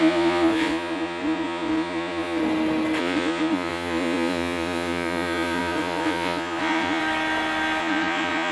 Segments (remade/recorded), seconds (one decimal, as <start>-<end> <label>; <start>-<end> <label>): 0.0-2.4 remade; 2.4-3.0 recorded; 3.0-7.0 remade; 7.0-7.8 recorded; 7.8-8.5 remade